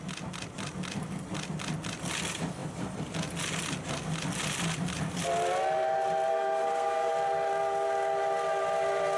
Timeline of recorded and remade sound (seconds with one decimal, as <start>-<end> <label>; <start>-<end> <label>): 0.0-6.3 recorded; 6.3-7.1 remade; 7.1-9.2 recorded